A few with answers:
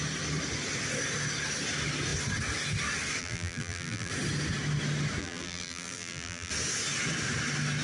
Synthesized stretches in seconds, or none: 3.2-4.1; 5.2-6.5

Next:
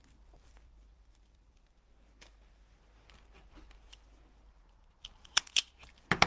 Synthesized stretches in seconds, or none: 0.0-2.1

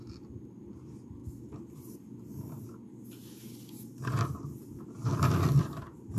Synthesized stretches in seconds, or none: 0.0-1.2; 3.9-5.1; 5.6-6.2

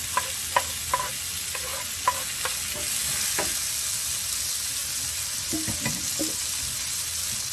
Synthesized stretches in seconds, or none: none

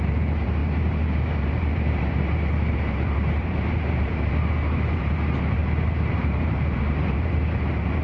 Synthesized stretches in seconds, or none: 0.0-8.0